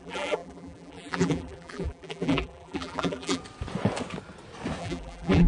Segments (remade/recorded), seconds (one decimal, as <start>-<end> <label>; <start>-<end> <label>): 0.0-3.4 remade; 3.4-4.8 recorded; 4.8-5.5 remade